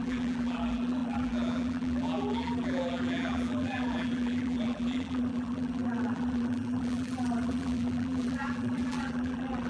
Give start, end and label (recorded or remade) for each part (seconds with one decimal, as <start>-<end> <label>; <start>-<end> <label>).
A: 0.0-9.7 remade